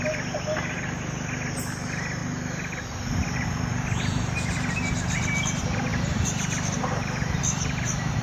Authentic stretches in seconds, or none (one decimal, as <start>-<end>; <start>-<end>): 0.0-5.9; 7.4-8.2